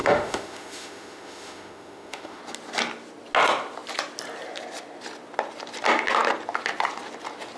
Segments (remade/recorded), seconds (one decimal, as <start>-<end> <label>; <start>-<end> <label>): 0.0-2.4 remade; 2.4-7.6 recorded